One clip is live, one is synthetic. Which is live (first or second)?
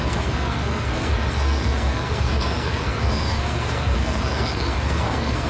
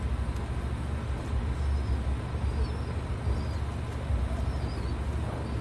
second